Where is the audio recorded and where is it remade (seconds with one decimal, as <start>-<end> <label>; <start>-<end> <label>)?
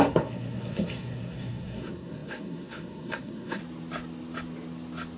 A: 0.0-3.6 remade; 3.6-5.2 recorded